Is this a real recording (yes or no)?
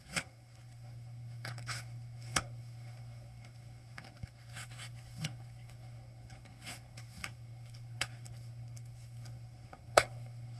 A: no